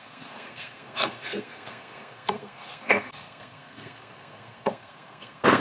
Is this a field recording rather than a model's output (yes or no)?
no